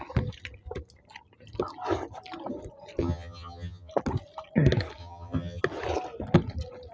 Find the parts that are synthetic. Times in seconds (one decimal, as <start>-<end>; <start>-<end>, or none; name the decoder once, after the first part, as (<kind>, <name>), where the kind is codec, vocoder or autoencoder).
3.0-3.9 (vocoder, HiFi-GAN); 5.0-5.6